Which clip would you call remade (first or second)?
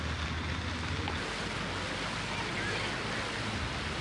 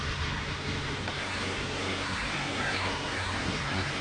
second